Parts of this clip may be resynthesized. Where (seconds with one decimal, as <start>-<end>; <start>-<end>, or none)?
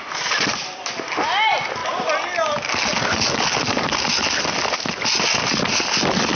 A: none